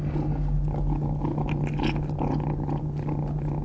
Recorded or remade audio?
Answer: recorded